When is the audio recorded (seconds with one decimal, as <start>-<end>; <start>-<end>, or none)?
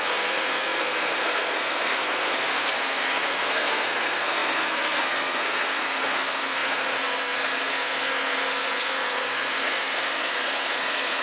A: none